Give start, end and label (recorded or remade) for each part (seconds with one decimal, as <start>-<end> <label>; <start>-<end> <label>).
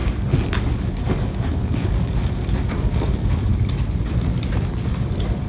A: 0.0-0.6 recorded; 0.6-3.5 remade; 3.5-5.5 recorded